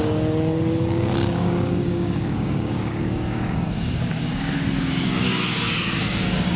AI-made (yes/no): yes